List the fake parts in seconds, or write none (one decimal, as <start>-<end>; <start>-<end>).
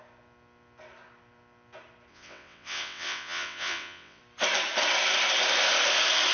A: 2.1-4.2